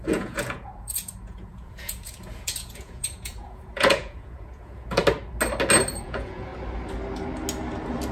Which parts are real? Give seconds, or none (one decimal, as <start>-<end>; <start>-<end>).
5.0-5.9; 6.5-8.1